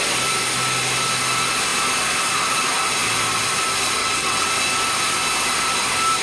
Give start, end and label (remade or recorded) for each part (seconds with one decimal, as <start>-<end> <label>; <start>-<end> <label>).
0.0-4.0 recorded; 4.0-4.5 remade; 4.5-6.2 recorded